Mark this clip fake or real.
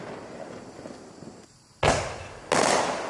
real